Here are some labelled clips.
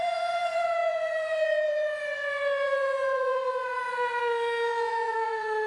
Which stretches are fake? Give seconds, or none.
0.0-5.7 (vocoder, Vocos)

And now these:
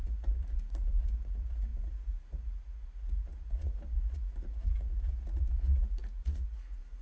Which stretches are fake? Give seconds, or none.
0.0-7.0 (vocoder, Vocos)

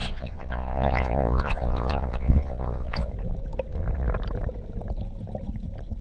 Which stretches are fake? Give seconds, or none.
0.0-3.1 (vocoder, Vocos)